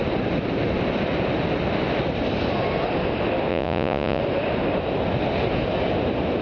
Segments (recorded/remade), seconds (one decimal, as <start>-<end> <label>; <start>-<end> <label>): 0.0-3.5 recorded; 3.5-4.2 remade; 4.2-6.4 recorded